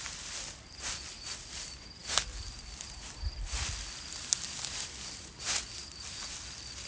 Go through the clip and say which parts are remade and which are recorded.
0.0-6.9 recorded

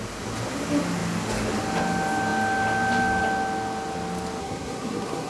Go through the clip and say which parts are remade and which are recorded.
0.0-4.4 recorded; 4.4-5.3 remade

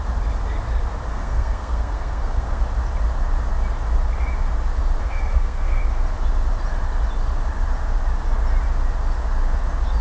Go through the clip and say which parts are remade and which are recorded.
0.0-1.1 recorded; 1.1-2.6 remade; 2.6-5.0 recorded; 5.0-5.8 remade; 5.8-10.0 recorded

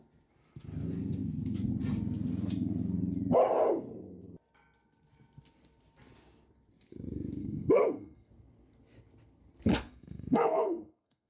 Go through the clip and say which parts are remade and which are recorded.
0.0-7.4 recorded; 7.4-8.3 remade; 8.3-9.7 recorded; 9.7-11.3 remade

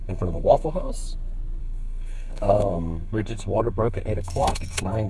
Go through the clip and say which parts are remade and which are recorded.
0.0-0.9 remade; 0.9-1.6 recorded; 1.6-5.1 remade

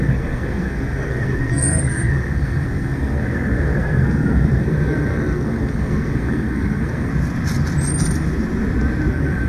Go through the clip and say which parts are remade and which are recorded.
0.0-7.1 remade; 7.1-9.1 recorded; 9.1-9.5 remade